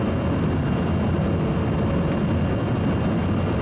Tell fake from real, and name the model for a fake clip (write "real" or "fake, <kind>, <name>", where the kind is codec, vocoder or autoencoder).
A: real